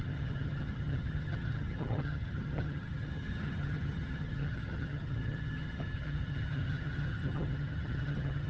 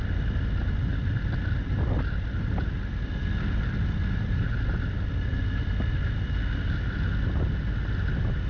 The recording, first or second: second